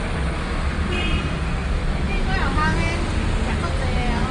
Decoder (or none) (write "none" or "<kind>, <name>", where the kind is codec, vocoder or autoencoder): none